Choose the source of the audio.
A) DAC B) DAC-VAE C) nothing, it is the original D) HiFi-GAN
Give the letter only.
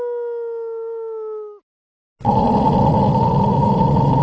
C